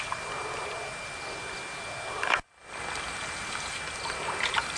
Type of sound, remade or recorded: recorded